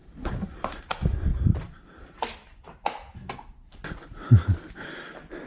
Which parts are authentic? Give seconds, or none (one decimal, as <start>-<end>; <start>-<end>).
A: 0.8-1.3; 2.7-5.5